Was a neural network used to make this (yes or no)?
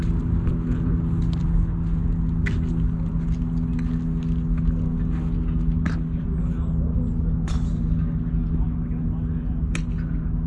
no